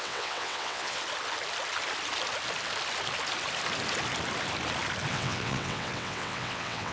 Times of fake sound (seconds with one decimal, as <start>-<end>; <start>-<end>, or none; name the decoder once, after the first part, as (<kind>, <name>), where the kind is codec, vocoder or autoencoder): 0.0-1.0 (vocoder, WaveNeXt); 5.1-6.9